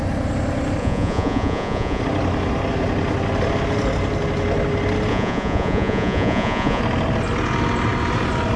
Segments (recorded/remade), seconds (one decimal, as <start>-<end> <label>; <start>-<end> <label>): 0.0-0.8 recorded; 0.8-2.0 remade; 2.0-5.1 recorded; 5.1-6.8 remade; 6.8-8.6 recorded